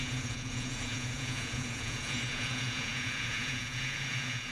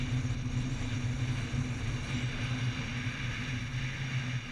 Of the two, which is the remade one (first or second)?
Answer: first